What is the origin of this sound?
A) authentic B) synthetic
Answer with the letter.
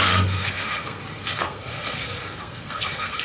B